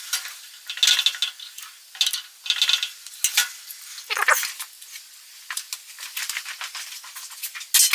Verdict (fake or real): real